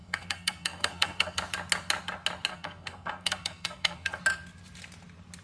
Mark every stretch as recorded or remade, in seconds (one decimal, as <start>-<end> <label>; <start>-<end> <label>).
0.0-1.4 remade; 1.4-2.5 recorded; 2.5-4.2 remade; 4.2-5.4 recorded

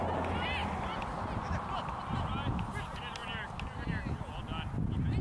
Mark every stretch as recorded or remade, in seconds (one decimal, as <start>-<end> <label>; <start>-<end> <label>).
0.0-5.2 recorded

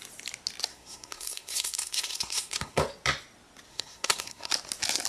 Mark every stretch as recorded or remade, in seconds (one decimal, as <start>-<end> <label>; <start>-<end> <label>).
0.0-0.7 recorded; 0.7-2.8 remade; 2.8-3.7 recorded; 3.7-4.5 remade; 4.5-5.1 recorded